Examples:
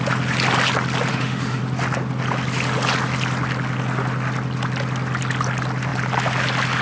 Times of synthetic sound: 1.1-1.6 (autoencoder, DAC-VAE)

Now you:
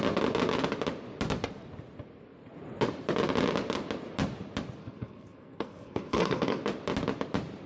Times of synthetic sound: 4.8-6.6 (codec, SNAC)

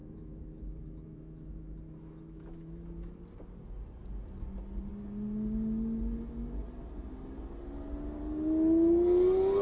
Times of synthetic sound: 0.0-3.2 (autoencoder, DAC-VAE)

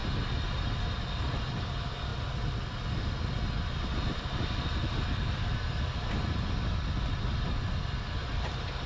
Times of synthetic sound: none

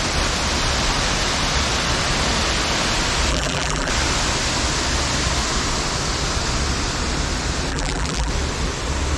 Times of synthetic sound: 3.3-3.9 (vocoder, BigVGAN v2); 7.7-8.3

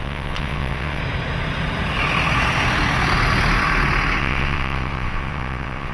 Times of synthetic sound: 0.0-1.0 (vocoder, WaveNeXt); 4.2-5.9